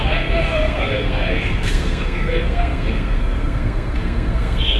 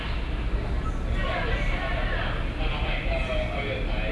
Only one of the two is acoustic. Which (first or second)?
second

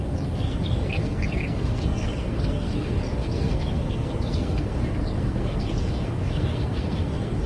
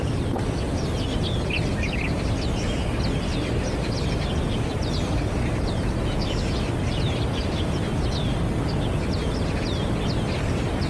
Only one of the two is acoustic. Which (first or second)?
second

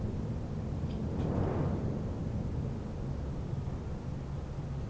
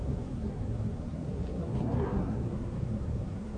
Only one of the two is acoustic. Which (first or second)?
first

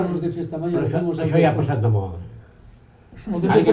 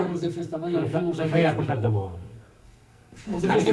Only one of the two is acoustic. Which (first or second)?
first